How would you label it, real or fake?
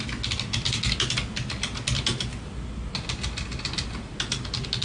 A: real